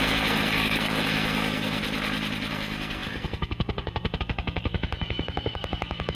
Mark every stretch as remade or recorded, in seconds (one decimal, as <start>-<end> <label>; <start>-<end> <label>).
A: 0.0-1.8 remade; 1.8-2.5 recorded; 2.5-6.1 remade